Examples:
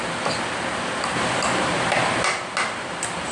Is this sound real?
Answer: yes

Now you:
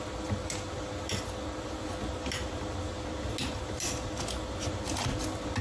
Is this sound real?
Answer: yes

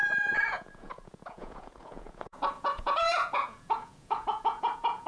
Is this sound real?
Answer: no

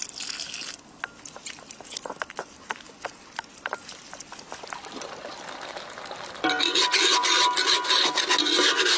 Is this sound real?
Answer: yes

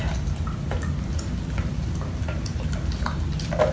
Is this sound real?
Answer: yes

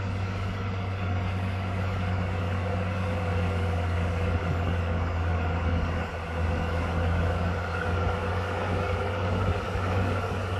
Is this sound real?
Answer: no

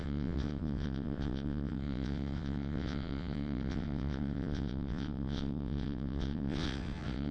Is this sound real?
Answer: no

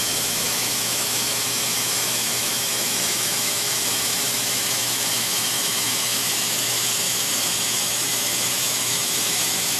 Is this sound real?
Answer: no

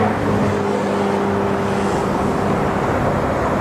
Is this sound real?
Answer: yes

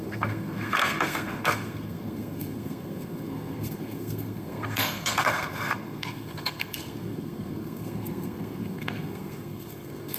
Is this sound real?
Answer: no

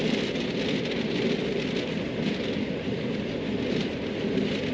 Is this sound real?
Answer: yes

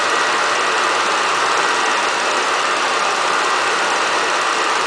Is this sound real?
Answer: yes